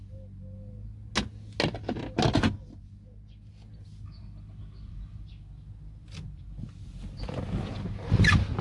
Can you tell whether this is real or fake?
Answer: real